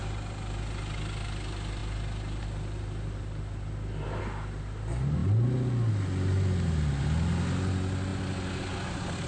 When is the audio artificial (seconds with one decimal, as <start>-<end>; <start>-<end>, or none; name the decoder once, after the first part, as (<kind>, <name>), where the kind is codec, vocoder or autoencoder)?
none